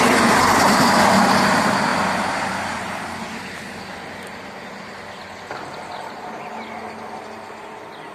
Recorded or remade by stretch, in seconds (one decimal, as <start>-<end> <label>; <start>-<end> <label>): 0.0-8.1 recorded